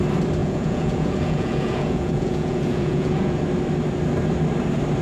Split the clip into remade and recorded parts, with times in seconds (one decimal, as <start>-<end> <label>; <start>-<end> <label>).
0.0-0.4 recorded; 0.4-3.4 remade; 3.4-5.0 recorded